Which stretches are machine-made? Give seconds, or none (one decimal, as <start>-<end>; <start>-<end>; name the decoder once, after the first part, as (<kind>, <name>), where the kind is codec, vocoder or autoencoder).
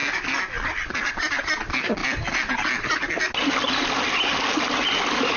none